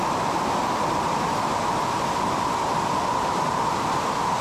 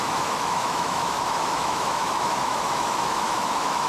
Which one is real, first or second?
first